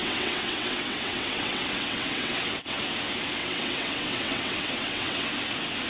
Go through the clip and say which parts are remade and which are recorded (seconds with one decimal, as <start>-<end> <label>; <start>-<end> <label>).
0.0-2.8 remade; 2.8-3.4 recorded; 3.4-5.3 remade; 5.3-5.9 recorded